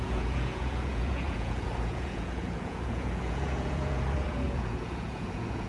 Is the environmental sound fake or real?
fake